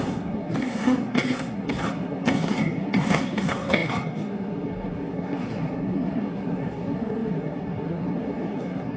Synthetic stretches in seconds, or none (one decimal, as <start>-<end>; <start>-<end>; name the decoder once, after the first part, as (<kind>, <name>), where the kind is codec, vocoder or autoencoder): 0.0-9.0 (codec, SNAC)